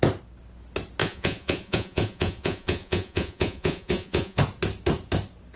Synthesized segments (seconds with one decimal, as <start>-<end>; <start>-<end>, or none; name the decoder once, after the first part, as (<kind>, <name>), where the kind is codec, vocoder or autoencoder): 1.0-4.4 (vocoder, Vocos)